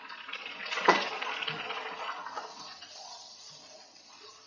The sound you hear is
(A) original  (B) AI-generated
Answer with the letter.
B